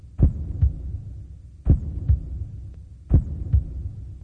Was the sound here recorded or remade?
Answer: recorded